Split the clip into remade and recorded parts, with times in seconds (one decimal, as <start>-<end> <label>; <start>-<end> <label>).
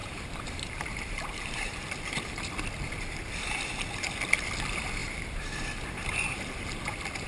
0.0-1.9 remade; 1.9-5.0 recorded; 5.0-6.4 remade; 6.4-7.3 recorded